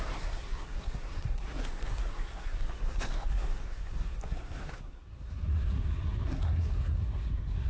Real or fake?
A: fake